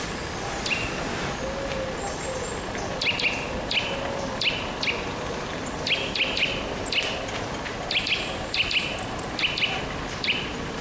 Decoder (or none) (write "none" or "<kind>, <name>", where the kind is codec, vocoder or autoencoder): none